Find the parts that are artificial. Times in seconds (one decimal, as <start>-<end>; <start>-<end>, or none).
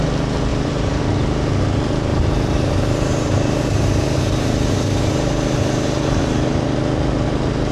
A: 0.5-1.0; 2.1-6.7